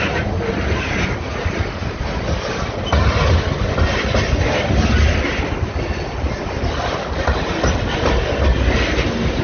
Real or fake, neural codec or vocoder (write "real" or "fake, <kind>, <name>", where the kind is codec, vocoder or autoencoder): real